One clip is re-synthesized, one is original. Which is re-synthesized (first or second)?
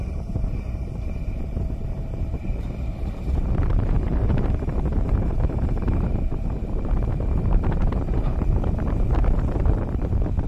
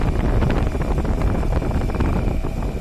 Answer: first